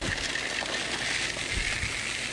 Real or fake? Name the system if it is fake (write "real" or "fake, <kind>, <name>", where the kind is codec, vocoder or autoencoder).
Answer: real